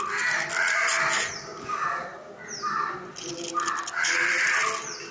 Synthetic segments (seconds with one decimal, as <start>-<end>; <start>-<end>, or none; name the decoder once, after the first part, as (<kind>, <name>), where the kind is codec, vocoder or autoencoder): none